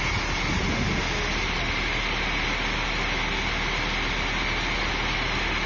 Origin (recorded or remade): recorded